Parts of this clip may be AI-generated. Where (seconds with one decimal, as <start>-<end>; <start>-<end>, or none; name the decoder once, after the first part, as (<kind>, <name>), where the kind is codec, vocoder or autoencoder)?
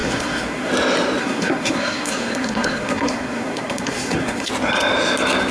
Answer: 0.0-0.7 (codec, SNAC); 1.2-4.5